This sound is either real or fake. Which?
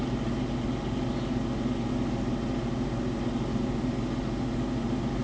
real